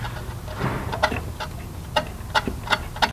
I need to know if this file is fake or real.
real